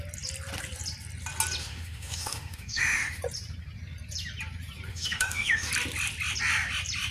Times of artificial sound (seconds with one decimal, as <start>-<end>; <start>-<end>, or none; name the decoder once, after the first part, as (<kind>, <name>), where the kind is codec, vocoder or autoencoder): 1.6-3.2 (autoencoder, DAC-VAE); 4.9-5.7